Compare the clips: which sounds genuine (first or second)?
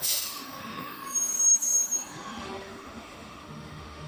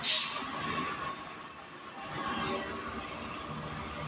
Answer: second